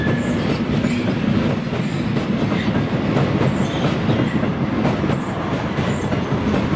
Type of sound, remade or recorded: recorded